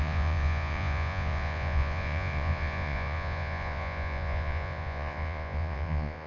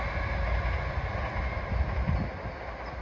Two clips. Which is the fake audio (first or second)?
first